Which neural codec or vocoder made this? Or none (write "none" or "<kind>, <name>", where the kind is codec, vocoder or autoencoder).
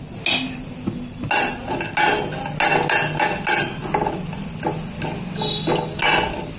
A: none